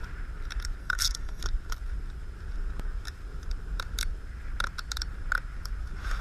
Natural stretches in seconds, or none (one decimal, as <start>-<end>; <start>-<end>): 0.0-0.8; 1.4-6.2